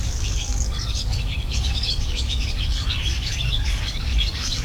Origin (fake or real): fake